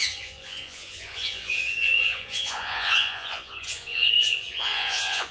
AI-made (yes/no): yes